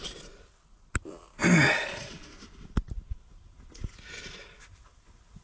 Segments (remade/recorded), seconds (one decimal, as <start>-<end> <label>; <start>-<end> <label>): 0.0-5.4 recorded